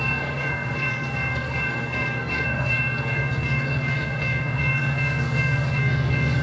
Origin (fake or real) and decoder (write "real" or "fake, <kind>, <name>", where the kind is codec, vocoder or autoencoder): fake, codec, SNAC